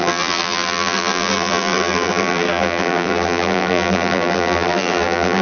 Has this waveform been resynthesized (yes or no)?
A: yes